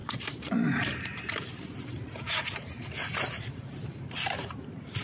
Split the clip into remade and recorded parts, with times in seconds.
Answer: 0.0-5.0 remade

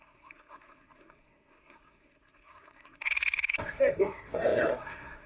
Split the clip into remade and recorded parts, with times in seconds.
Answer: 0.0-5.3 remade

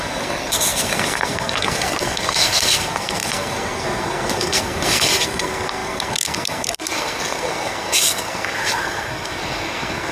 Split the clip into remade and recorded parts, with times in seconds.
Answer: 0.0-10.1 remade

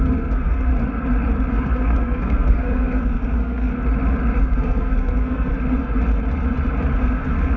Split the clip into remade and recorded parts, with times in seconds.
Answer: 0.0-0.7 remade; 0.7-1.5 recorded; 1.5-3.7 remade; 3.7-4.4 recorded; 4.4-5.5 remade; 5.5-7.0 recorded; 7.0-7.6 remade

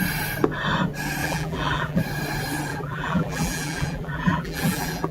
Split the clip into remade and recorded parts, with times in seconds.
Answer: 0.0-1.2 recorded; 1.2-2.0 remade; 2.0-2.7 recorded; 2.7-5.1 remade

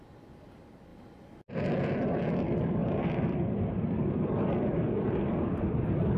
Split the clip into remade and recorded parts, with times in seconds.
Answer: 0.0-6.2 remade

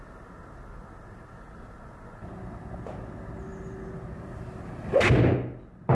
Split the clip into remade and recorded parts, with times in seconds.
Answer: 0.0-5.9 recorded